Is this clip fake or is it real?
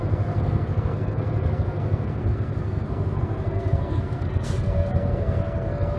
fake